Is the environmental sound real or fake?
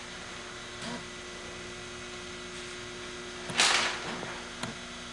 real